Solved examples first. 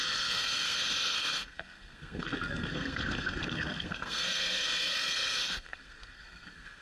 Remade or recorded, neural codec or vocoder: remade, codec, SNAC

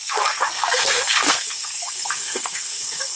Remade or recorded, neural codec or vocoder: remade, codec, SNAC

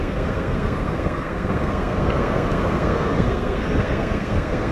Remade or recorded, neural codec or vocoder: remade, codec, SNAC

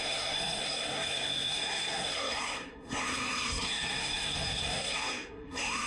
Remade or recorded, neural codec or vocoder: remade, codec, SNAC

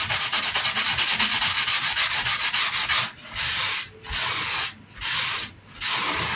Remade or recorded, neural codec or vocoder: recorded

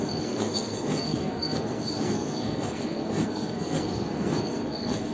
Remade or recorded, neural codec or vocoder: remade, codec, SNAC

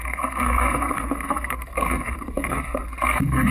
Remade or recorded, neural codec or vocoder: remade, codec, SNAC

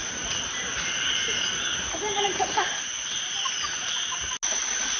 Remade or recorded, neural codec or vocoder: recorded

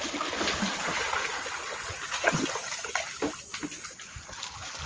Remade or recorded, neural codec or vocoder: recorded